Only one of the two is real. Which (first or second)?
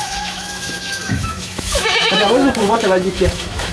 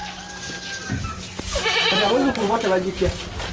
second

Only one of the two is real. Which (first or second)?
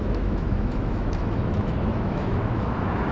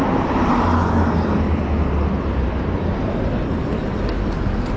second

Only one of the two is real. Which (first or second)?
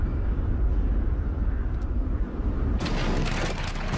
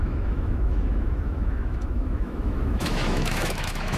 first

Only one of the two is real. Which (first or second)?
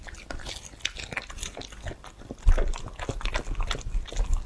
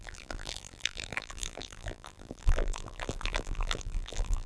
first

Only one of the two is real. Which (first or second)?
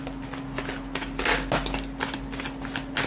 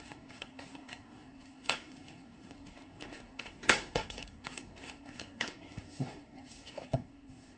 first